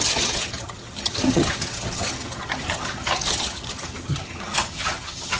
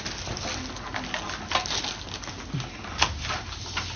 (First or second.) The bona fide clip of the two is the second